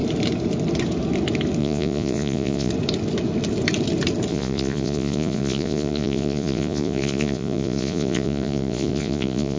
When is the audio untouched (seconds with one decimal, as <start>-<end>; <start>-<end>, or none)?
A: 0.0-1.6; 2.7-4.3

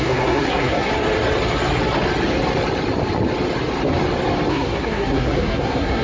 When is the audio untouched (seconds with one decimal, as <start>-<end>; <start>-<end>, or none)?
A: 0.9-4.5

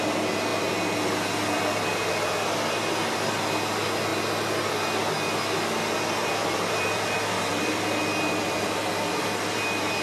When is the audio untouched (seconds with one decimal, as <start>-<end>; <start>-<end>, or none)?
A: 0.0-6.2; 8.0-10.0

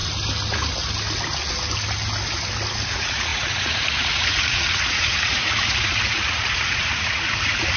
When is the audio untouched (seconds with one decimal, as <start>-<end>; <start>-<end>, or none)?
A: 0.0-2.9

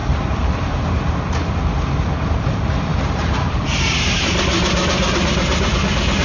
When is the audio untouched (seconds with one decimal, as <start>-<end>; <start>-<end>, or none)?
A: 1.1-2.9; 4.7-6.2